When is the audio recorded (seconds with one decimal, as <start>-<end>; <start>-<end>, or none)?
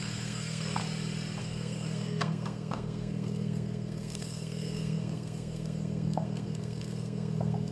0.8-1.4